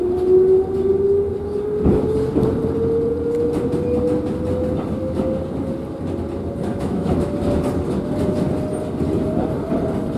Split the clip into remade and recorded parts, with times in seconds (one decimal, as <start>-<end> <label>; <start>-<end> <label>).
0.0-6.7 recorded; 6.7-7.3 remade; 7.3-10.2 recorded